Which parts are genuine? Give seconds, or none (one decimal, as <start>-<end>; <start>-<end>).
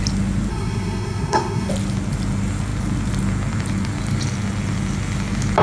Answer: 0.0-0.5; 1.7-5.6